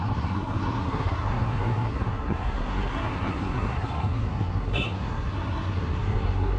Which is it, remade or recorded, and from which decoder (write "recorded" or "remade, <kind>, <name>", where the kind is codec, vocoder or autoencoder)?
remade, codec, SNAC